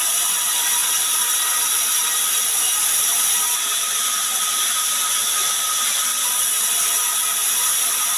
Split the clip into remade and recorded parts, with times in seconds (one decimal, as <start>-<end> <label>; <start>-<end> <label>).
0.0-8.2 recorded